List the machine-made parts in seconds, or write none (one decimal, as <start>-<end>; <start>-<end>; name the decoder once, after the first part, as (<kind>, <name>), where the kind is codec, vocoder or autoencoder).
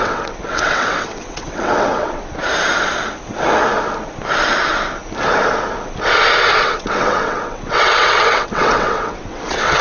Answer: 0.0-2.4 (vocoder, WaveNeXt); 6.6-9.8